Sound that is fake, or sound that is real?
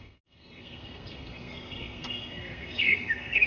fake